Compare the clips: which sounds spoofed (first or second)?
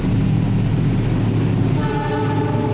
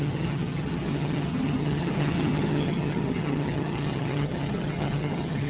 second